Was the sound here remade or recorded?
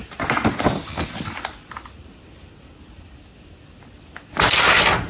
recorded